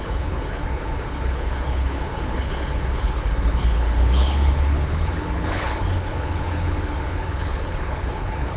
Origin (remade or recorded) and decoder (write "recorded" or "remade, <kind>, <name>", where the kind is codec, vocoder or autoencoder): remade, codec, HILCodec